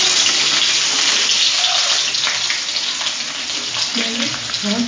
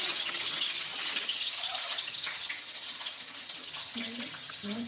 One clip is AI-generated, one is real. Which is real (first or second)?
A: first